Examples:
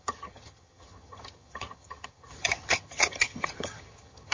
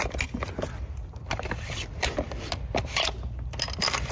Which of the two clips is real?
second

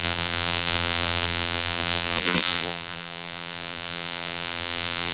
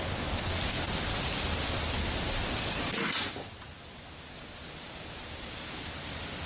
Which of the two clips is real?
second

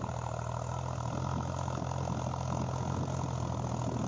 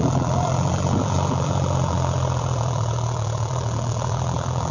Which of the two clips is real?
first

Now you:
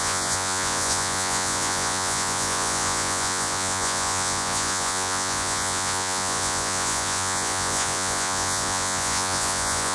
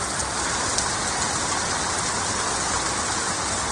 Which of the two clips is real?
second